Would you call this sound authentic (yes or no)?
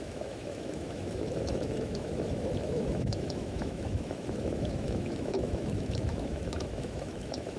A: no